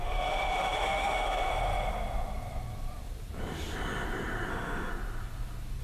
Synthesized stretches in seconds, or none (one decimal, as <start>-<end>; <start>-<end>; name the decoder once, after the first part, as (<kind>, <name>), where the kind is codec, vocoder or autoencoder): 0.0-1.5 (autoencoder, DAC-VAE); 4.5-4.9